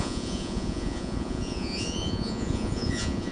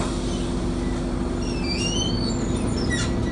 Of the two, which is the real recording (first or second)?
second